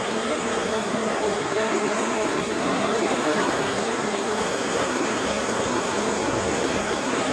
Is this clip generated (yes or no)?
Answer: yes